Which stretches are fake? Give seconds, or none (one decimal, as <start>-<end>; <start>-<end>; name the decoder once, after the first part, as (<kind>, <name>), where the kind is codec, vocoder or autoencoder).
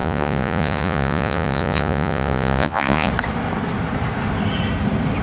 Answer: 0.0-3.1 (vocoder, Vocos)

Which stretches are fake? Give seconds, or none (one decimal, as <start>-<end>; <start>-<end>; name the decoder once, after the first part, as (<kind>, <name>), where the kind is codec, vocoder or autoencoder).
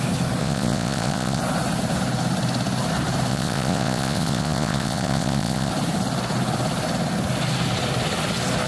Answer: 0.4-1.4 (vocoder, Vocos); 3.3-5.7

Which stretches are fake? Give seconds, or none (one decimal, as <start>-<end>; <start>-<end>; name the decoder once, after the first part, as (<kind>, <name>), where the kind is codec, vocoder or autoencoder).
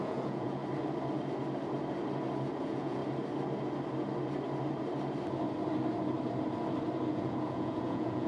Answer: 0.0-0.6 (vocoder, Vocos); 2.6-3.0; 7.1-8.3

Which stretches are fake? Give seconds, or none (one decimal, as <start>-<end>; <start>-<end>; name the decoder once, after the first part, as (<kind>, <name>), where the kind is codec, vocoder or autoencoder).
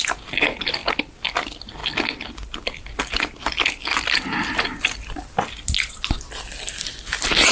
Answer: none